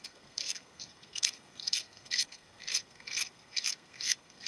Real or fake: fake